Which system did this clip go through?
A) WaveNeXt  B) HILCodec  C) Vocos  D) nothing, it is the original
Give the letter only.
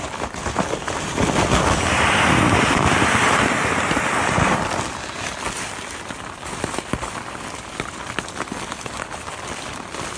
D